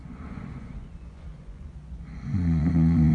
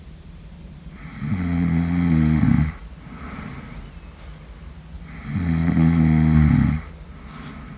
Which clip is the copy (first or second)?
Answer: first